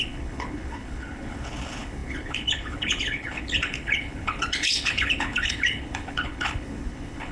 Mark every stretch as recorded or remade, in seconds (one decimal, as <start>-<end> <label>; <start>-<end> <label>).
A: 0.0-7.3 remade